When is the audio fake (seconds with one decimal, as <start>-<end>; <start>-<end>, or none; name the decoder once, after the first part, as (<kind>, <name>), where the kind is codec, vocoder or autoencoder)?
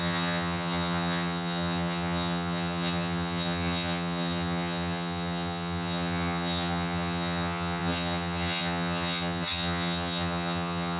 0.0-11.0 (vocoder, HiFi-GAN)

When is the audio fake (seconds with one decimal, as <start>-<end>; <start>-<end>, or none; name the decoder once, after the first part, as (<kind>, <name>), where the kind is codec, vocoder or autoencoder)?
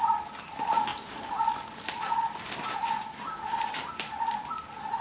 0.9-3.9 (vocoder, BigVGAN v2)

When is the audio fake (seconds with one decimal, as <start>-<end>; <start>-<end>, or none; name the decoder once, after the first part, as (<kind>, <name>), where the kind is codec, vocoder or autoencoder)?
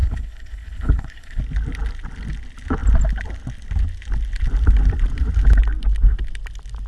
0.0-1.4 (codec, HILCodec)